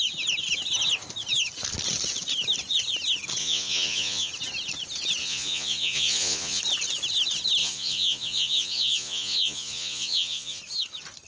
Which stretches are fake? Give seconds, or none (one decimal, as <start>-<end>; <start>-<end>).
3.4-4.3; 5.2-6.6; 7.6-10.6